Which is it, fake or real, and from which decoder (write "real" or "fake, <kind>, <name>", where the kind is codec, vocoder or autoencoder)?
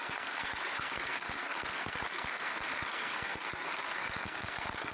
fake, codec, SNAC